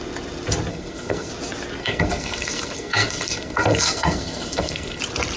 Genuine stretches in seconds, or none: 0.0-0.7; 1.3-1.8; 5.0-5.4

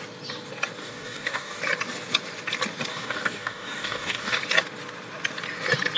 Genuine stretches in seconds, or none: 0.0-0.8; 1.6-2.9; 4.4-6.0

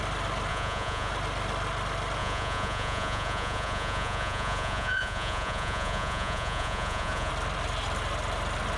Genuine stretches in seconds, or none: 0.0-0.5; 1.1-2.2; 7.3-8.8